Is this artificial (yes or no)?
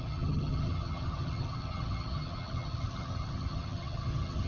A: yes